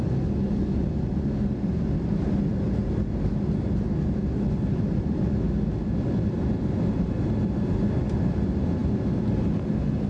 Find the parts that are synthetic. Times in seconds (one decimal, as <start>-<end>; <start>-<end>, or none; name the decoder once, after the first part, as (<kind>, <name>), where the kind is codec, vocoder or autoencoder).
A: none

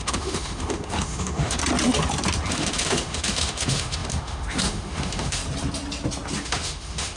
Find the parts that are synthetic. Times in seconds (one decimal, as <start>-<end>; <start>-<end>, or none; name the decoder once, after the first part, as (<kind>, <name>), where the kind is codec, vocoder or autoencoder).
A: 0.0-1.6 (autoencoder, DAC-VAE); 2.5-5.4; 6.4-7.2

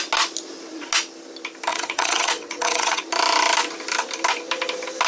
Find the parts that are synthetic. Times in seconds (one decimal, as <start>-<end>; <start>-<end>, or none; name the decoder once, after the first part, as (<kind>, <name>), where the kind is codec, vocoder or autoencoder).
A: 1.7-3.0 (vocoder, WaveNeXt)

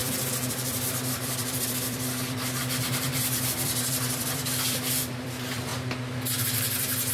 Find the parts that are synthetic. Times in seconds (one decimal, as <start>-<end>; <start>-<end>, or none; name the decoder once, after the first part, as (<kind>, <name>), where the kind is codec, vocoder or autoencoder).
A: 0.0-5.7 (vocoder, BigVGAN v2); 6.4-7.1

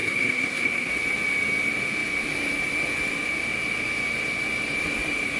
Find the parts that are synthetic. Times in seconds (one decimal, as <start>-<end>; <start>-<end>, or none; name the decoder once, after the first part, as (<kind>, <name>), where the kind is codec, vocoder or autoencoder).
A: 0.0-0.9 (codec, SNAC)

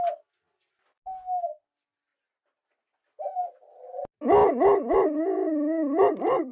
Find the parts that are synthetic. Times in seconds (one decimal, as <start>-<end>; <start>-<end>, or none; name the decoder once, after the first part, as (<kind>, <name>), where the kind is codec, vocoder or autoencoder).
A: none